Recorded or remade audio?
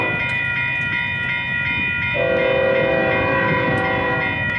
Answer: recorded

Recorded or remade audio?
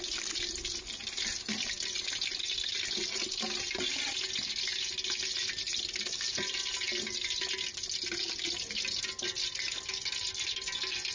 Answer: recorded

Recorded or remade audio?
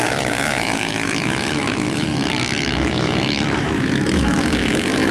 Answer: remade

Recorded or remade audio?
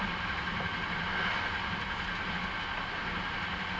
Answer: recorded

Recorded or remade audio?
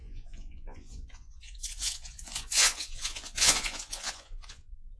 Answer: remade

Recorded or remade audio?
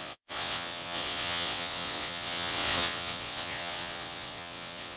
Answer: remade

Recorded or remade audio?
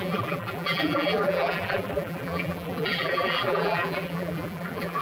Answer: remade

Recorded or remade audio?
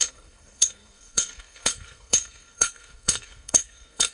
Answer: remade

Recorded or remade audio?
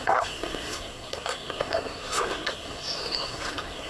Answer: remade